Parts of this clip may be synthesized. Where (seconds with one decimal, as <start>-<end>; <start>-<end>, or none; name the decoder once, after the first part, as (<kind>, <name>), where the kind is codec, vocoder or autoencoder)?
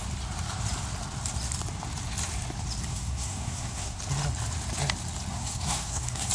2.9-4.0 (codec, SNAC); 5.3-6.3